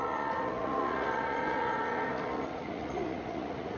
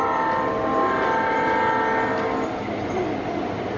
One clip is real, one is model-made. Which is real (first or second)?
second